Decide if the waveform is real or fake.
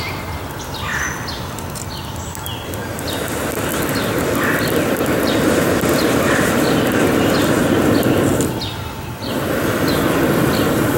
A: real